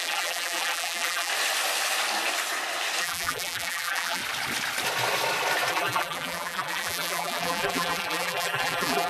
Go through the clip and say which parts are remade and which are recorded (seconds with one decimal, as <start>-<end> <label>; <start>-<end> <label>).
0.0-1.3 remade; 1.3-3.0 recorded; 3.0-4.2 remade; 4.2-5.7 recorded; 5.7-9.1 remade